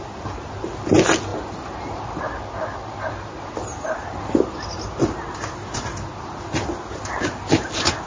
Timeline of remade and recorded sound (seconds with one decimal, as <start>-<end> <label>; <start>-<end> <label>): 0.0-8.1 recorded